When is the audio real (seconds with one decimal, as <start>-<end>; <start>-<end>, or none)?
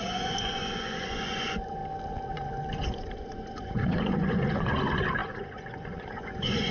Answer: 1.8-2.3